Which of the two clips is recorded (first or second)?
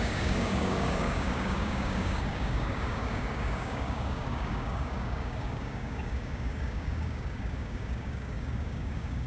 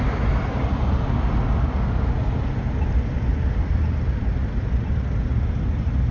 second